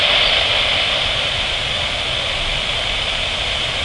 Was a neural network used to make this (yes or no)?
yes